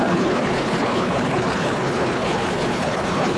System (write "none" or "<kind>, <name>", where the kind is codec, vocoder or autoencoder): codec, HILCodec